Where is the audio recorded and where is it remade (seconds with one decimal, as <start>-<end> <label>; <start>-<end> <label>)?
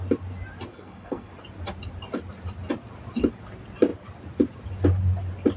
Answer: 0.0-0.7 recorded; 0.7-1.3 remade; 1.3-5.6 recorded